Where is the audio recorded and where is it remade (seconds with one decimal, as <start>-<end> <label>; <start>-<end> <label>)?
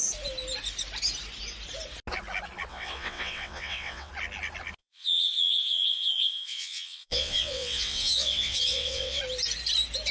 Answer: 0.0-2.7 recorded; 2.7-4.1 remade; 4.1-4.8 recorded; 4.8-9.2 remade; 9.2-10.1 recorded